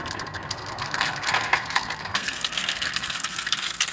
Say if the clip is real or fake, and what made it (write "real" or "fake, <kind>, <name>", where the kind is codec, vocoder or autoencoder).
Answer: fake, codec, SNAC